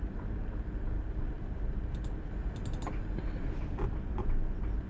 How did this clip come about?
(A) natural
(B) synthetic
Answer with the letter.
A